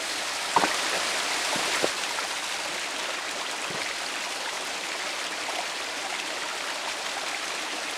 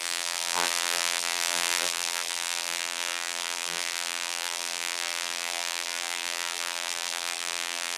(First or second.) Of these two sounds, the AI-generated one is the second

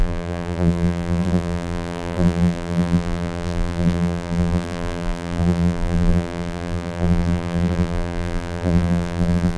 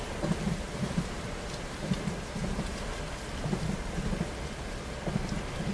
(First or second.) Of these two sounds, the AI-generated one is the first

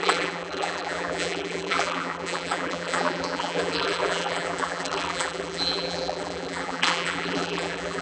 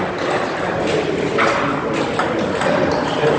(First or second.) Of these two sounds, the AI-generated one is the first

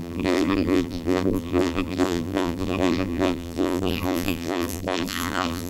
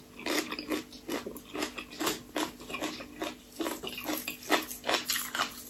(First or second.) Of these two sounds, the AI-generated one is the first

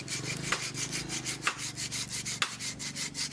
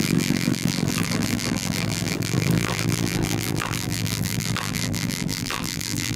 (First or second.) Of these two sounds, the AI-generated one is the second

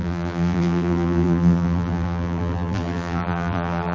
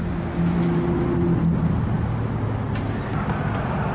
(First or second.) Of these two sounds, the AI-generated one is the first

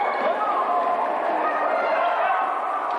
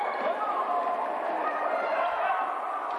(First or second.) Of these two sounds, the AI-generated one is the second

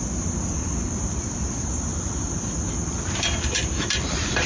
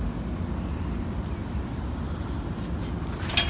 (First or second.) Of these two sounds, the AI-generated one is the first